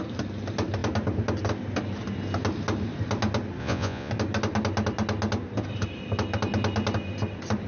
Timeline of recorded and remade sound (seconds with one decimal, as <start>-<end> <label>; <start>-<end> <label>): 0.0-3.6 recorded; 3.6-4.1 remade; 4.1-7.7 recorded